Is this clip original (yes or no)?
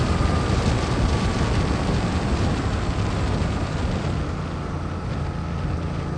yes